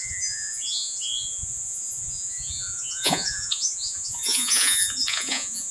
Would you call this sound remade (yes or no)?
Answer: yes